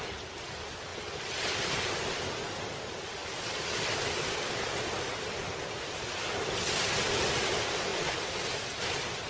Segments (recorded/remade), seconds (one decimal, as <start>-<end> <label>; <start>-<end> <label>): 0.0-3.2 recorded; 3.2-5.2 remade; 5.2-7.9 recorded; 7.9-8.6 remade; 8.6-9.3 recorded